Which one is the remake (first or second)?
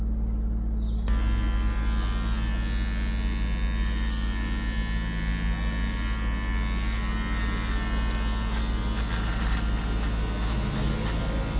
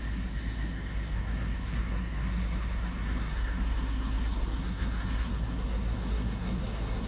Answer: second